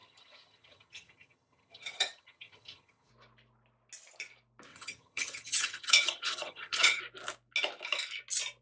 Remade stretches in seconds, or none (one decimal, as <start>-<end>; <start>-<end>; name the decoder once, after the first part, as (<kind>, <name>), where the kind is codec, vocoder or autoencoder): 0.0-3.1 (vocoder, HiFi-GAN); 4.7-7.0